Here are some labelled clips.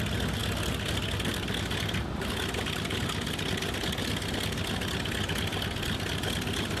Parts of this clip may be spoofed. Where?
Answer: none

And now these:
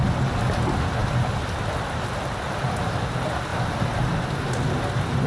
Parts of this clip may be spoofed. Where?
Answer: none

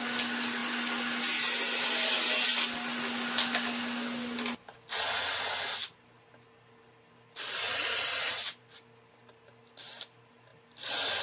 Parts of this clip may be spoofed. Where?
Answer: 7.7-8.6 (vocoder, BigVGAN v2)